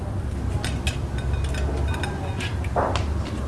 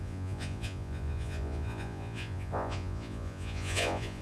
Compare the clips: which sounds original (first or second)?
first